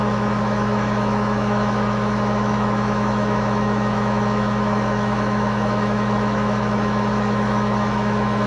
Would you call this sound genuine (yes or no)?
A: no